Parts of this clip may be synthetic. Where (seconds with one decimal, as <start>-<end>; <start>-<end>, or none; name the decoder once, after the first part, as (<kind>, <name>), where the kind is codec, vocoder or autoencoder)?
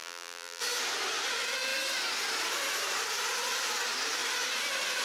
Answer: 0.0-0.6 (vocoder, BigVGAN v2)